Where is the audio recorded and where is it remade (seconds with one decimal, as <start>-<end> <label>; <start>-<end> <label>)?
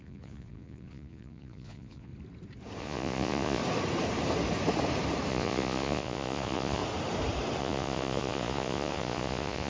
0.0-2.1 remade; 2.1-2.8 recorded; 2.8-3.6 remade; 3.6-5.3 recorded; 5.3-6.8 remade; 6.8-7.6 recorded; 7.6-9.7 remade